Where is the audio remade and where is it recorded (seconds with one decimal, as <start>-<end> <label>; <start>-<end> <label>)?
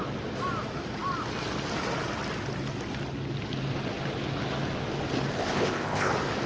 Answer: 0.0-5.3 recorded; 5.3-6.1 remade; 6.1-6.5 recorded